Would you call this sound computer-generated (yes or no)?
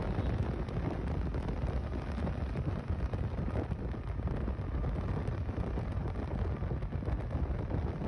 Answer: no